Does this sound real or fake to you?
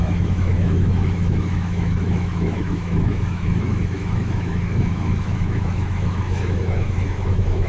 fake